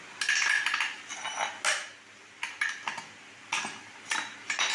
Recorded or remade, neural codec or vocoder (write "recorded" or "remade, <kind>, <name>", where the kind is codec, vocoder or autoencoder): recorded